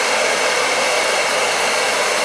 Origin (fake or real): real